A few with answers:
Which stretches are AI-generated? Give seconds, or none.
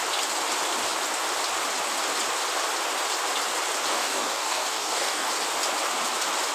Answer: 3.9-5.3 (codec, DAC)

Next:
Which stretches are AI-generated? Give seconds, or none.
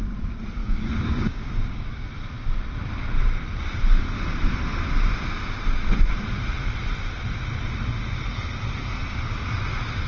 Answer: 0.6-2.1 (codec, DAC)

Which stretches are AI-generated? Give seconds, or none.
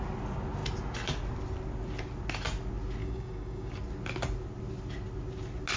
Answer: 3.0-3.7 (codec, DAC)